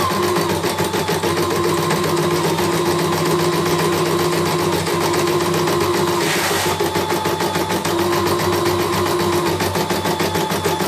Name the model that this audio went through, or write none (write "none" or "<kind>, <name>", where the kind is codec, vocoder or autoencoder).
none